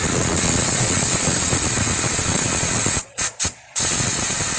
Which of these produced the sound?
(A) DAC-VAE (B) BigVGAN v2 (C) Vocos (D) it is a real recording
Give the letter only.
C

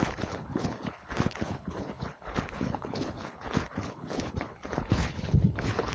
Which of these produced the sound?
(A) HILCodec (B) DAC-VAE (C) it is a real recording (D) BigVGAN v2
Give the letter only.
A